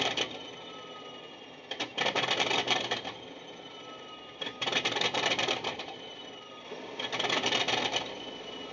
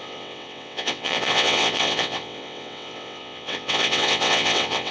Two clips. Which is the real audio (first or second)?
first